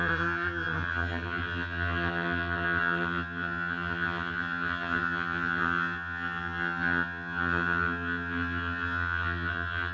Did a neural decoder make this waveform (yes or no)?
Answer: yes